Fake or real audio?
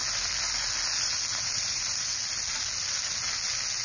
real